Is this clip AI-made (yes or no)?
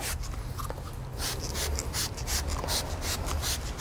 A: no